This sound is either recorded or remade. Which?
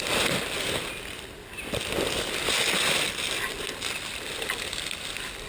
recorded